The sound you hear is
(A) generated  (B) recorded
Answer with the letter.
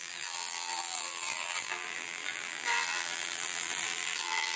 A